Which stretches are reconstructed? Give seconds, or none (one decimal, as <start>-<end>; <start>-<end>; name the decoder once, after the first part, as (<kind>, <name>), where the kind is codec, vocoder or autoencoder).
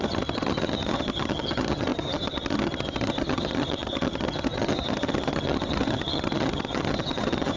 0.0-7.6 (vocoder, HiFi-GAN)